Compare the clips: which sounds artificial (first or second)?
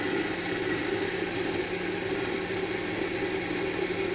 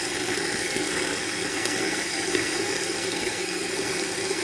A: second